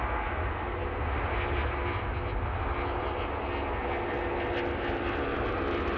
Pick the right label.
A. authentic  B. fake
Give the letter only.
A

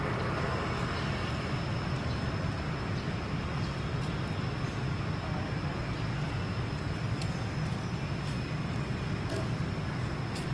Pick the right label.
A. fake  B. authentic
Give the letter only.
B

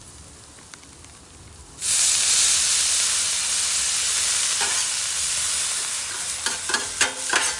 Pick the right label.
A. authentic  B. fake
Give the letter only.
A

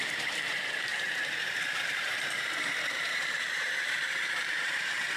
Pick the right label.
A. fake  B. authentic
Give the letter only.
A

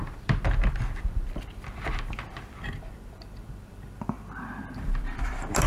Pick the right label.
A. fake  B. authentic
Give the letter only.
A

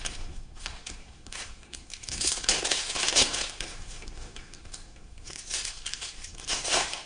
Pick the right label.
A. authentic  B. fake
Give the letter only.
B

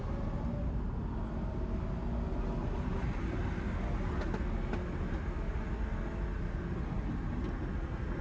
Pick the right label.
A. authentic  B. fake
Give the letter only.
A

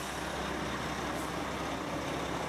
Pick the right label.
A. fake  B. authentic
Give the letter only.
B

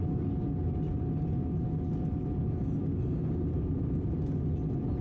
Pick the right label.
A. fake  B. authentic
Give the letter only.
B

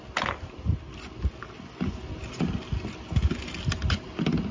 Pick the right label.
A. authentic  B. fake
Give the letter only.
A